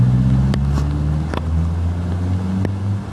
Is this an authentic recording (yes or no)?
yes